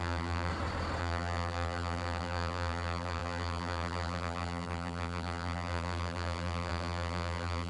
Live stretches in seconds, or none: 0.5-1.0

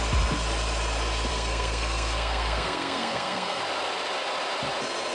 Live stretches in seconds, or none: 0.0-1.3; 3.6-5.1

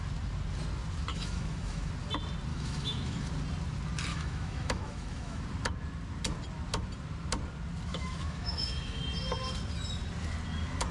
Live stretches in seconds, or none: 0.0-1.1; 1.9-2.5; 3.3-4.1; 5.4-7.9; 9.0-10.9

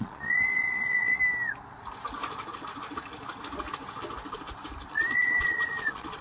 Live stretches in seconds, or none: 1.2-4.9

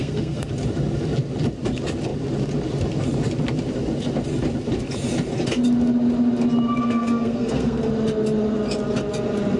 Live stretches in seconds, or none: 0.5-6.8; 7.9-9.6

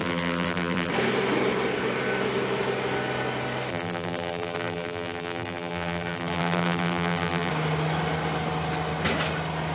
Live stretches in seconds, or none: 0.9-3.7; 7.5-9.7

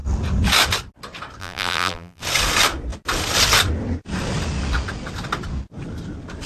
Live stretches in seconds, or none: 0.0-1.4; 2.2-6.5

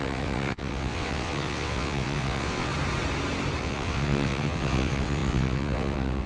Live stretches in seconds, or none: 2.7-3.6